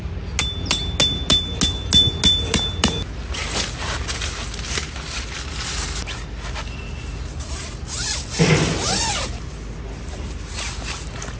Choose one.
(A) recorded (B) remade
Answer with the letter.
A